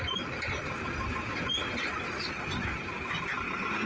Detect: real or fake real